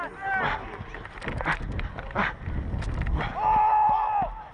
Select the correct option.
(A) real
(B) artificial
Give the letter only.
A